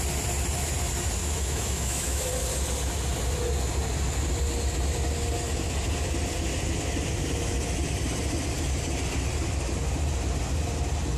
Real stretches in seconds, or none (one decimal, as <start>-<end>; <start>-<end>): 0.0-1.2; 2.3-11.2